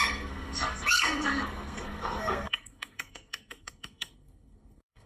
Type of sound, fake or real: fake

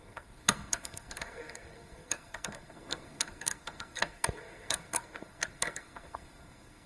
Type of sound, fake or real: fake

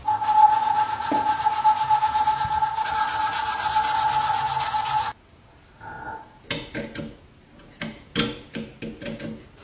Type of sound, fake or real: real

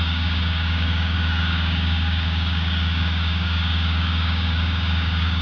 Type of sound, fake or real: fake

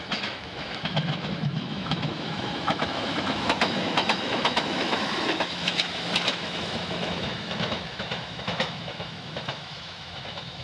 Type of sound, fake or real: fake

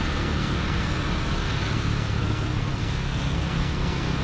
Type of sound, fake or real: fake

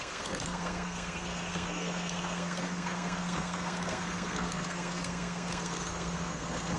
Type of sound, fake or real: fake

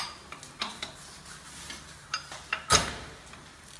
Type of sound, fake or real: real